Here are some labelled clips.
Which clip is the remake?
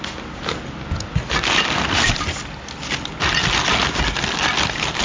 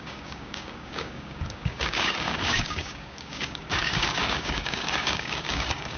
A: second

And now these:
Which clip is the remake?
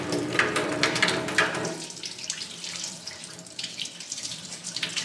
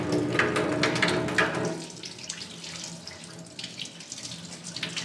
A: first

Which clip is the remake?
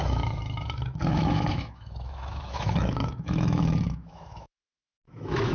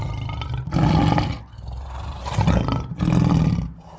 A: first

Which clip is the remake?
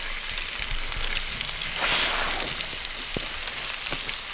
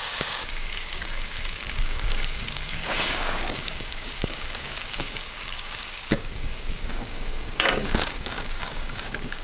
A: second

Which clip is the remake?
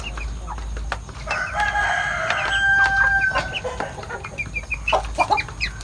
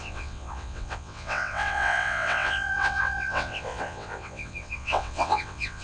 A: second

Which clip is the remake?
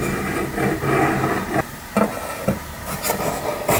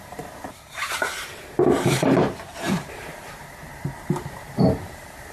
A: second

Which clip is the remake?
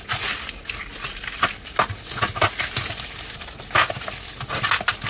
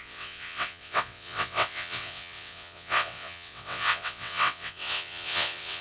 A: second